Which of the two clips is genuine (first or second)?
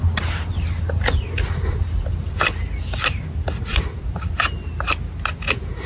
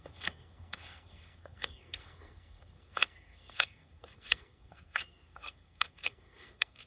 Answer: first